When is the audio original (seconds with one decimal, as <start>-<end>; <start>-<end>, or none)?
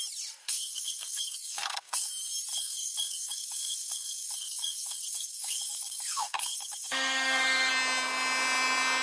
0.0-0.4; 2.1-2.5; 7.7-9.0